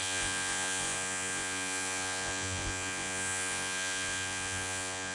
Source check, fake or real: fake